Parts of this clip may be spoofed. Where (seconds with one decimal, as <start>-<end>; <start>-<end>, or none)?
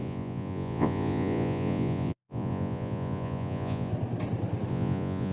0.0-3.9; 4.7-5.3